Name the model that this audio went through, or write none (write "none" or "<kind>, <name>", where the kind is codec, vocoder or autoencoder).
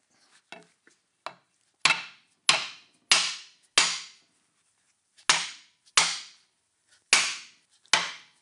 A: none